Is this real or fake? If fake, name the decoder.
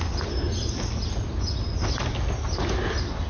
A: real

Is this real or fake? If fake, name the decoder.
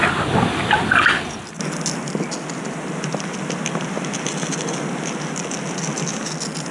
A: real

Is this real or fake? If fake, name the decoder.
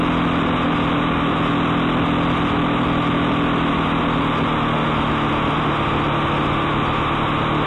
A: real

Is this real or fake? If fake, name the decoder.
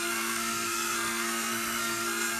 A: fake, codec, SNAC